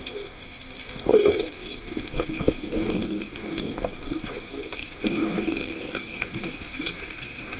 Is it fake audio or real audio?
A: fake